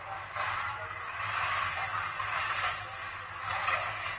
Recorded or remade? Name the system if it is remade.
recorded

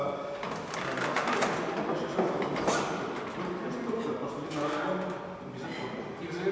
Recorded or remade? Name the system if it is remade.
recorded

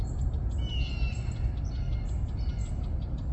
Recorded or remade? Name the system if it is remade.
recorded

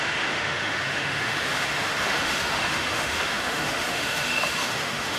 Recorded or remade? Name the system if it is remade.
remade, autoencoder, DAC-VAE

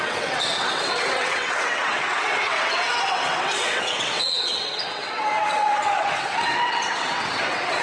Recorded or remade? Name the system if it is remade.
remade, vocoder, WaveNeXt